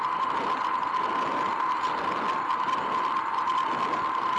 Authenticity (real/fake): real